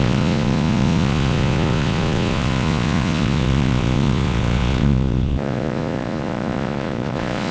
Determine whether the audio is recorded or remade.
remade